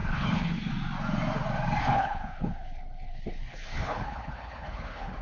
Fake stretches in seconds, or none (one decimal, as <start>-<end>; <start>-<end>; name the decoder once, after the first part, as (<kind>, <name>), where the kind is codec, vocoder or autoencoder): 0.0-0.7 (codec, HILCodec); 1.8-5.2